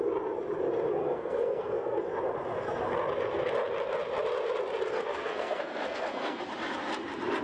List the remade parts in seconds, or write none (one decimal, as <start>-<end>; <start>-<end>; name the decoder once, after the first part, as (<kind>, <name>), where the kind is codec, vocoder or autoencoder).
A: 1.0-2.0 (codec, SNAC); 4.9-6.4